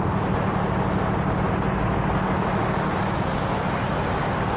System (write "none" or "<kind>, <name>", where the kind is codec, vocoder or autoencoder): none